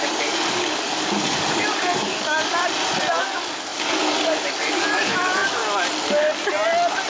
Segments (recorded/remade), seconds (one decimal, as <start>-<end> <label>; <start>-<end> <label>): 0.0-2.6 remade; 2.6-3.2 recorded; 3.2-5.6 remade; 5.6-7.1 recorded